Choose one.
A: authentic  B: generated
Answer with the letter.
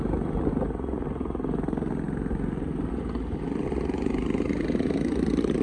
A